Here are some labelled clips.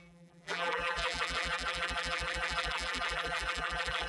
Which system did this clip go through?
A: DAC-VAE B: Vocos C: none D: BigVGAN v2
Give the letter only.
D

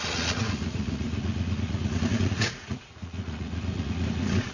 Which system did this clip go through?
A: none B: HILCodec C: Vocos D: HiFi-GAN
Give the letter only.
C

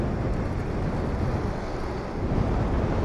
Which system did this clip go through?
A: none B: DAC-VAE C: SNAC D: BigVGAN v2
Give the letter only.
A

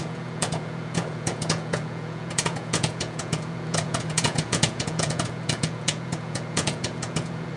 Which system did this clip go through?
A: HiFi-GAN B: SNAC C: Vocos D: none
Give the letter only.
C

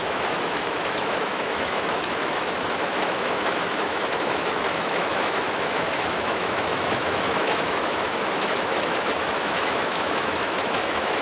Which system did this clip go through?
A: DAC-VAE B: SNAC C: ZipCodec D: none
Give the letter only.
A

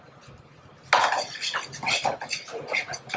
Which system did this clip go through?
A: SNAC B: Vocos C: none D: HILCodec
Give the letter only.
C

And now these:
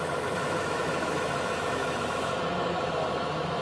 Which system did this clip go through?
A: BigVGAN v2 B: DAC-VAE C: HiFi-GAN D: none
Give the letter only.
B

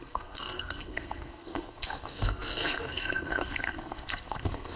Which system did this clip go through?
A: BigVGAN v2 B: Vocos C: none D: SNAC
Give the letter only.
D